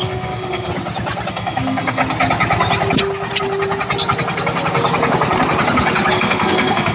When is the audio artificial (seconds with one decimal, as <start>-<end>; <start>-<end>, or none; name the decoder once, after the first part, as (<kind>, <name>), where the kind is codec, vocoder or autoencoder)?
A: 0.0-0.7 (codec, SNAC); 1.3-2.0; 6.1-6.9